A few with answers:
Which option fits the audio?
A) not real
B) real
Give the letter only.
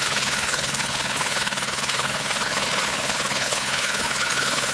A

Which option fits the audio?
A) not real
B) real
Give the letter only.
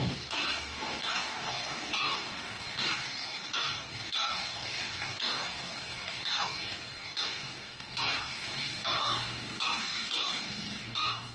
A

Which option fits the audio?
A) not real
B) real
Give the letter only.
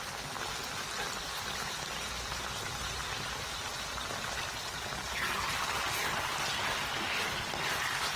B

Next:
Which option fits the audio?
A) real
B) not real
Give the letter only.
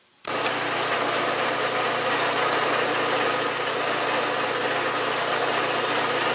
A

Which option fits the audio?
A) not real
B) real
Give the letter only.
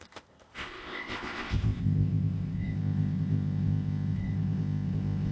A